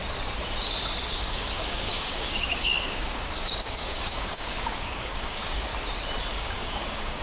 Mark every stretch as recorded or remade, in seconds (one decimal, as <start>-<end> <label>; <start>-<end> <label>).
0.0-1.1 recorded; 1.1-5.7 remade; 5.7-6.3 recorded; 6.3-7.2 remade